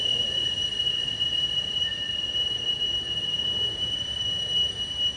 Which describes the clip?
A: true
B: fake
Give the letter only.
B